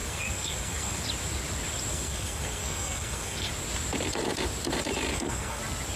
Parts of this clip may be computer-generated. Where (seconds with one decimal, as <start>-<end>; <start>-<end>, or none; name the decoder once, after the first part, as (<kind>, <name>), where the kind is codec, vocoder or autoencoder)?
0.0-1.0 (codec, SNAC); 1.9-3.5; 5.1-5.6